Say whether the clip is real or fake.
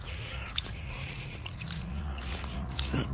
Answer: fake